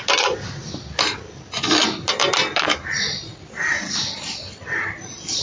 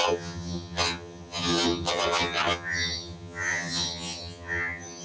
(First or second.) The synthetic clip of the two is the second